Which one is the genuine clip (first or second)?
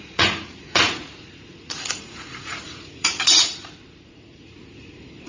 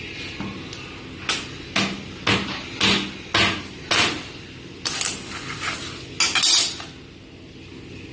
second